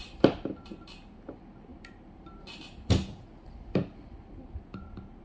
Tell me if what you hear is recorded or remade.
recorded